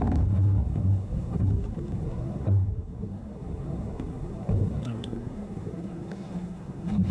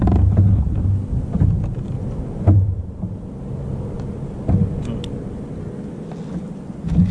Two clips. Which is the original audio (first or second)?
second